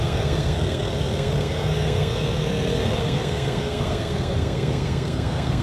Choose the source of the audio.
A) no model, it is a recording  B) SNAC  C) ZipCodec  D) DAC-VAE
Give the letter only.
B